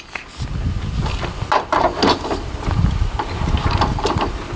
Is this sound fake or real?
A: real